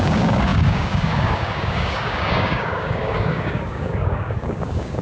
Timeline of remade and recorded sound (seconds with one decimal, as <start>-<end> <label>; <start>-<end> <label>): 0.0-5.0 remade